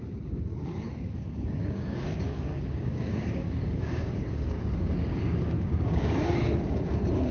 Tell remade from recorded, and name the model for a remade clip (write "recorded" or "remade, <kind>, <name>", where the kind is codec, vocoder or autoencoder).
remade, codec, DAC